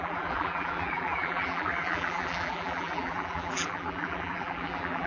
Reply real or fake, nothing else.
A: fake